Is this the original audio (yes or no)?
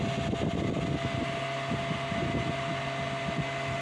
yes